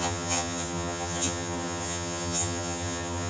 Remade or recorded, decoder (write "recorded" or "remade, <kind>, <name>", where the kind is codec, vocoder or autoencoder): remade, vocoder, HiFi-GAN